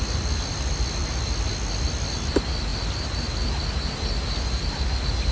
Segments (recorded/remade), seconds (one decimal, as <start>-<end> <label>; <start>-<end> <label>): 0.0-5.3 recorded